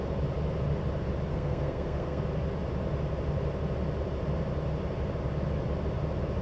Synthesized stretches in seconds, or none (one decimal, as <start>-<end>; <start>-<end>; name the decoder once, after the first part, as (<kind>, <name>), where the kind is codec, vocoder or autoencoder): 1.3-2.2 (codec, SNAC)